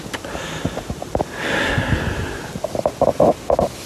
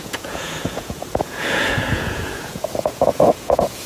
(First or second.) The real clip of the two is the first